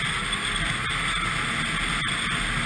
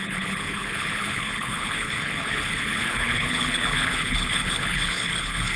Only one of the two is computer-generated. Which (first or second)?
second